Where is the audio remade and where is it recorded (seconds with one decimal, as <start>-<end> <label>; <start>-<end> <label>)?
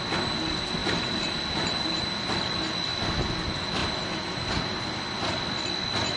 0.0-6.2 recorded